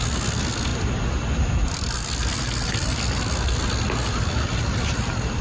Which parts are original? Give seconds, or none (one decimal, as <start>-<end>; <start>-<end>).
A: 0.0-0.7; 3.6-5.4